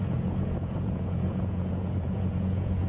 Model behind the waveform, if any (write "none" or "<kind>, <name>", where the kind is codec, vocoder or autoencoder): vocoder, Vocos